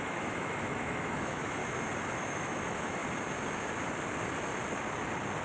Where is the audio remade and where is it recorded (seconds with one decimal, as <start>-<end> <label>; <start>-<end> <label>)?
0.0-1.6 remade; 1.6-2.1 recorded; 2.1-3.0 remade; 3.0-5.4 recorded